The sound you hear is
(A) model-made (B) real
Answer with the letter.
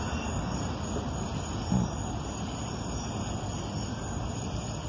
B